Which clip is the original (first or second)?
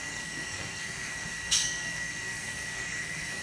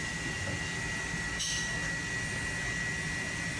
second